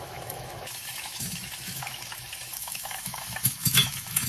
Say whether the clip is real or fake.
fake